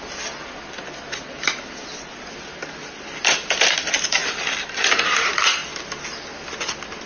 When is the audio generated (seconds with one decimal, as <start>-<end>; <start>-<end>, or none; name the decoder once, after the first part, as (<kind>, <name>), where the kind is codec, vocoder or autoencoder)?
none